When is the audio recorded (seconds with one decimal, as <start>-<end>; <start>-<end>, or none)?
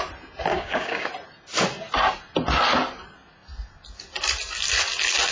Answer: 0.0-0.5; 1.1-5.3